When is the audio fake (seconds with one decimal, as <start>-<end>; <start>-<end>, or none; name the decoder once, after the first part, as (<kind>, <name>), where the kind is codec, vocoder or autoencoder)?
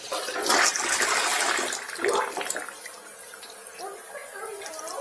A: none